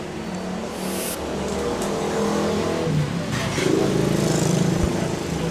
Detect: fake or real real